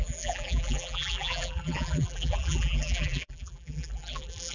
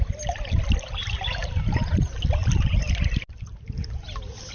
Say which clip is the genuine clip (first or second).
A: second